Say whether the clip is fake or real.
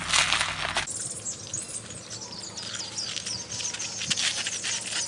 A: real